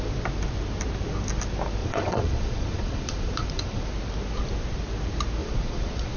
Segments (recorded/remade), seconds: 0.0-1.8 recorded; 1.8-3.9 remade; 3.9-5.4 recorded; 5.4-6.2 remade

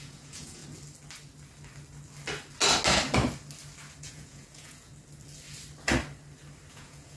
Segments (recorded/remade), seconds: 0.0-0.6 remade; 0.6-4.0 recorded; 4.0-4.9 remade; 4.9-6.7 recorded; 6.7-7.2 remade

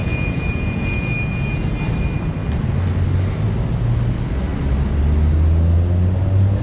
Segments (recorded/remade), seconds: 0.0-1.7 remade; 1.7-6.6 recorded

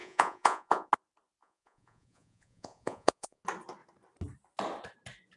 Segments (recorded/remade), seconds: 0.0-0.9 remade; 0.9-1.4 recorded; 1.4-3.4 remade; 3.4-5.4 recorded

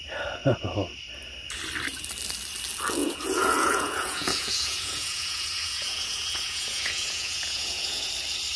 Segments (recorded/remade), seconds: 0.0-3.0 recorded; 3.0-8.1 remade; 8.1-8.6 recorded

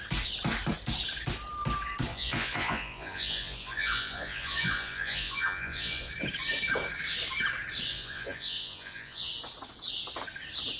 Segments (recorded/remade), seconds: 0.0-2.1 recorded; 2.1-6.1 remade; 6.1-7.9 recorded; 7.9-9.3 remade; 9.3-10.8 recorded